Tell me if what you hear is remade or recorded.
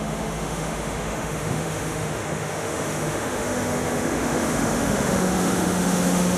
remade